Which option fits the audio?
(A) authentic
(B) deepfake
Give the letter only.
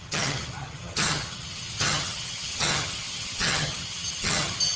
B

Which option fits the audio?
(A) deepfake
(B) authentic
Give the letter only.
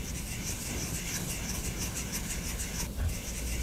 B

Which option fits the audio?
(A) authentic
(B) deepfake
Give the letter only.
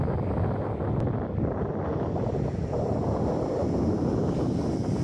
A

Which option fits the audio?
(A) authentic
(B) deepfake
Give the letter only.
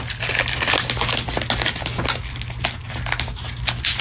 A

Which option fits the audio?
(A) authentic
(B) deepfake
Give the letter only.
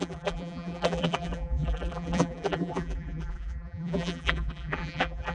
B